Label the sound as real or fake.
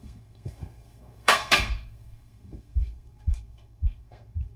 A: fake